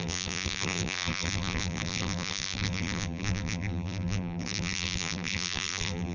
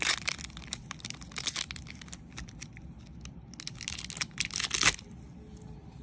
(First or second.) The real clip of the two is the second